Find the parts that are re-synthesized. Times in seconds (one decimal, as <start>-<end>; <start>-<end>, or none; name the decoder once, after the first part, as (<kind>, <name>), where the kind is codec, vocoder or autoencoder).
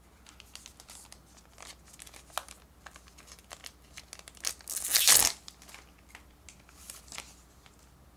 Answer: none